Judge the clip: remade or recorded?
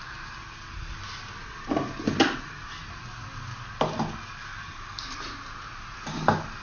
recorded